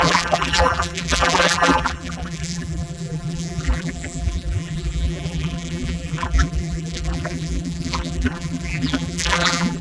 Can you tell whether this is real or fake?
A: fake